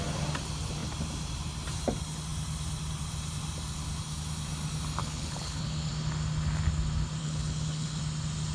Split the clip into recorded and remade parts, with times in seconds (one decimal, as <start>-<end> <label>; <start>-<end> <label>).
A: 0.0-5.0 recorded; 5.0-5.9 remade; 5.9-7.2 recorded; 7.2-8.0 remade; 8.0-8.5 recorded